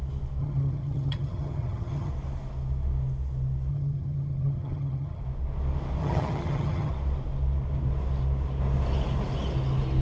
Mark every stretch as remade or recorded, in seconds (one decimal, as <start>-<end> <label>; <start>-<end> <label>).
0.0-0.4 recorded; 0.4-2.1 remade; 2.1-3.7 recorded; 3.7-5.2 remade; 5.2-6.0 recorded; 6.0-6.9 remade; 6.9-10.0 recorded